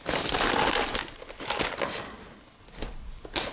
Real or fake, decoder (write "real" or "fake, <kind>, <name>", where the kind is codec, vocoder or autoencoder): real